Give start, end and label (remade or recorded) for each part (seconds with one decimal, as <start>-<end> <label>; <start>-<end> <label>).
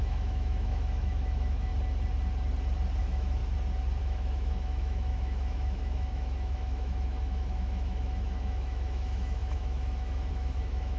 0.0-1.7 remade; 1.7-3.0 recorded; 3.0-3.4 remade; 3.4-4.0 recorded; 4.0-11.0 remade